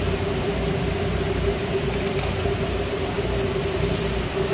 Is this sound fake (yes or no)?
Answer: no